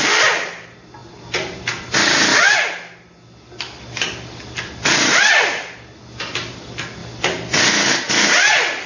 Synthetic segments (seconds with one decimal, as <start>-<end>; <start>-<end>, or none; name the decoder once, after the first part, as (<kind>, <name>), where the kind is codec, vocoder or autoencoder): none